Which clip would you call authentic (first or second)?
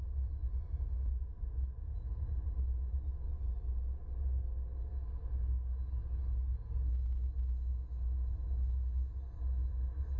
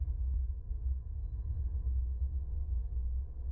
first